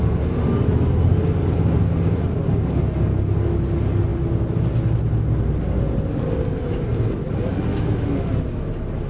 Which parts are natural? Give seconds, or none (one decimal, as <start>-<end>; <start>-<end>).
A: 0.0-7.7; 8.2-9.1